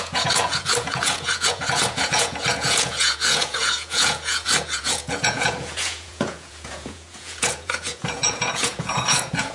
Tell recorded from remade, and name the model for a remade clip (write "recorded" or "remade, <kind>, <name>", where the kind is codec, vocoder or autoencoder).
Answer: remade, vocoder, Vocos